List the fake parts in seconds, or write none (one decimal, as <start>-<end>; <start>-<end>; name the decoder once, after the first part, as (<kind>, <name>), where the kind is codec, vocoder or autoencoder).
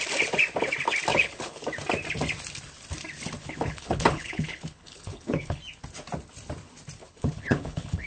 1.1-1.6 (codec, HILCodec); 3.4-5.6; 7.0-8.1